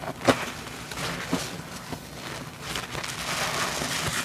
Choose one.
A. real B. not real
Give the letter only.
A